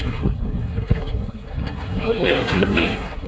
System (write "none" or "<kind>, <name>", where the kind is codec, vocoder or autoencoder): codec, SNAC